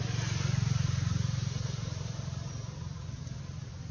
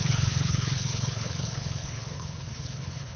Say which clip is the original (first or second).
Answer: first